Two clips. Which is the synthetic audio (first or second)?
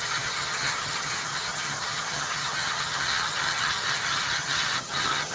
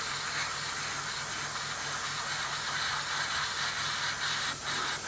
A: first